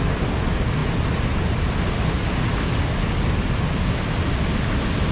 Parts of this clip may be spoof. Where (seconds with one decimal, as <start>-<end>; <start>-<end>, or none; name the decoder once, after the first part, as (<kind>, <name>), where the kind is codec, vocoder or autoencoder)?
none